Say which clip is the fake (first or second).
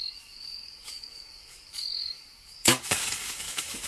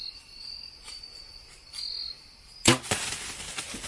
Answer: first